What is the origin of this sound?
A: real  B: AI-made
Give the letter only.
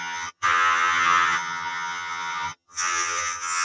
B